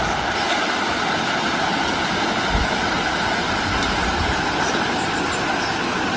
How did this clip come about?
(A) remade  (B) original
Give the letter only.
B